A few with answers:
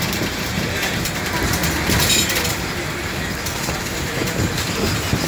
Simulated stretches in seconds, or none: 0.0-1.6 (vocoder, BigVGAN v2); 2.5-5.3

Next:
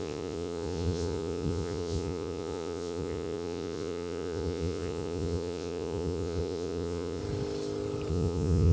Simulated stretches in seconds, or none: 0.0-7.2 (vocoder, Vocos); 8.1-8.7

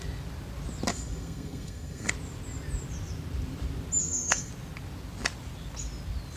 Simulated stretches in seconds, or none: 0.9-2.1 (codec, SNAC); 4.0-4.5

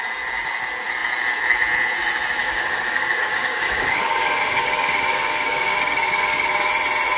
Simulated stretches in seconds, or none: 2.4-6.7 (codec, DAC)